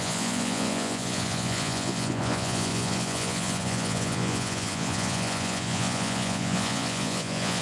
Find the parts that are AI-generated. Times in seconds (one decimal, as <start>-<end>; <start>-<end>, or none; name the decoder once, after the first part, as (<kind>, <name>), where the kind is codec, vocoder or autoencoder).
0.0-7.6 (vocoder, Vocos)